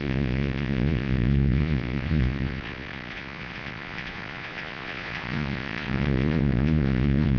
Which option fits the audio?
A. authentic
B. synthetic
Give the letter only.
B